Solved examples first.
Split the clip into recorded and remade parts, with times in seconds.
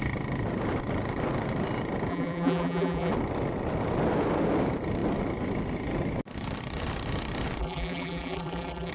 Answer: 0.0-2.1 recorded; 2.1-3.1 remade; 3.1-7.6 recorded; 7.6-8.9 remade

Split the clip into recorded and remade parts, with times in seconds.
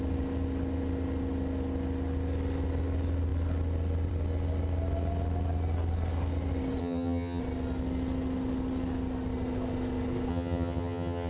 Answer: 0.0-6.8 recorded; 6.8-7.4 remade; 7.4-10.3 recorded; 10.3-11.3 remade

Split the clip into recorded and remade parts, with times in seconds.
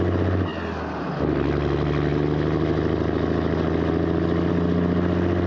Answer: 0.0-5.5 recorded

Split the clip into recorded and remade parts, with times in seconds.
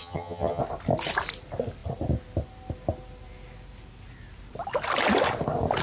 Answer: 0.0-0.6 remade; 0.6-5.8 recorded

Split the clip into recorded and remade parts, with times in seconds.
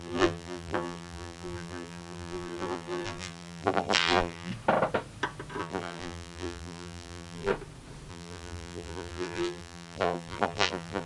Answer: 0.0-4.5 remade; 4.5-5.6 recorded; 5.6-7.5 remade; 7.5-8.1 recorded; 8.1-11.1 remade